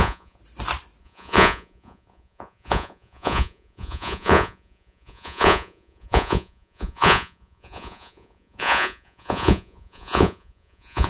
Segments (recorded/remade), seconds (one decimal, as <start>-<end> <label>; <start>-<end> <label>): 0.0-0.4 remade; 0.4-1.0 recorded; 1.0-11.1 remade